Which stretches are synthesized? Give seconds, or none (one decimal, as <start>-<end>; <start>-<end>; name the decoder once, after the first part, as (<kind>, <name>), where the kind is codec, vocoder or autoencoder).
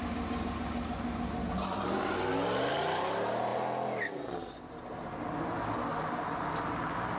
none